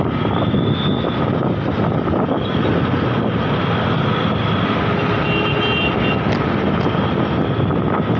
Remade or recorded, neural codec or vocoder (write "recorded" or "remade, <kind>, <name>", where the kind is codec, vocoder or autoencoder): recorded